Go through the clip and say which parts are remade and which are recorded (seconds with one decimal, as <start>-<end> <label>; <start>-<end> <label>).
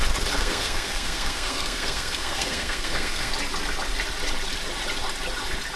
0.0-0.4 recorded; 0.4-3.3 remade; 3.3-5.8 recorded